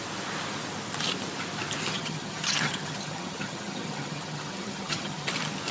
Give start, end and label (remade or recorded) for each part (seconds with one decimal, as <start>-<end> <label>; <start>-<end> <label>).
0.0-1.9 recorded; 1.9-5.3 remade; 5.3-5.7 recorded